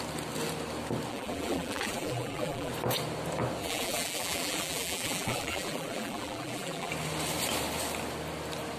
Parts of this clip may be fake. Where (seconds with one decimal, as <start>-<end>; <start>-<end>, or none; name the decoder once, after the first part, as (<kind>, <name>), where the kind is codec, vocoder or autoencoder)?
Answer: 1.1-2.7 (vocoder, BigVGAN v2); 3.6-6.9